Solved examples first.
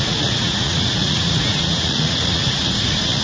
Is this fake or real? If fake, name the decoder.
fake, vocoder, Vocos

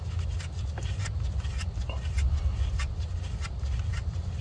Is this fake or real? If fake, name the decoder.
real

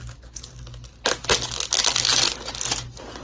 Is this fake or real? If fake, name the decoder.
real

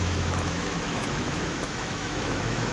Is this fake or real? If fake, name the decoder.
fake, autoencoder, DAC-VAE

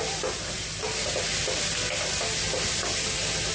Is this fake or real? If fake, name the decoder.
real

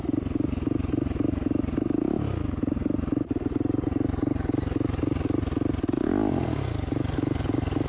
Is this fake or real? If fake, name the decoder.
real